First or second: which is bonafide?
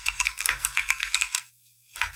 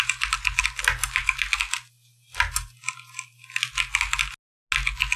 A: second